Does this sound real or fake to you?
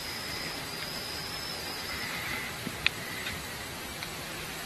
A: fake